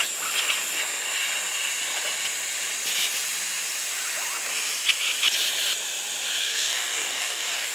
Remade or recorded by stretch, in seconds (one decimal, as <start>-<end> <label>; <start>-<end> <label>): 0.0-6.4 recorded; 6.4-7.7 remade